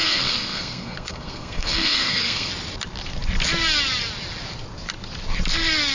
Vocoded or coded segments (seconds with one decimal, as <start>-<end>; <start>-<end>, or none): 0.0-2.5